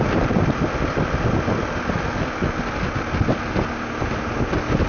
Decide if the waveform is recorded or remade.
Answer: recorded